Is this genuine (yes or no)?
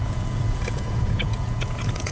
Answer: no